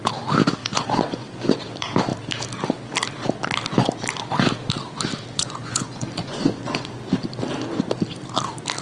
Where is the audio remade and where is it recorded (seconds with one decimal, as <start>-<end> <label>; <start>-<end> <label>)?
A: 0.0-0.6 recorded; 0.6-1.5 remade; 1.5-5.3 recorded; 5.3-7.0 remade; 7.0-8.8 recorded

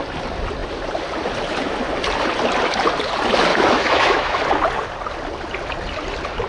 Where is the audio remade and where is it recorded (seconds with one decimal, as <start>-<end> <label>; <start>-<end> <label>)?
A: 0.0-3.5 recorded; 3.5-4.4 remade; 4.4-6.5 recorded